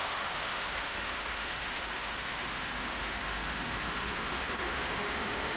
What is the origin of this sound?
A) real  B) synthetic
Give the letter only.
B